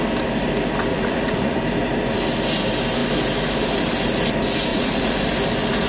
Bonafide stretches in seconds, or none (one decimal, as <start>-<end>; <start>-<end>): 0.0-0.9; 1.6-4.7; 5.2-5.9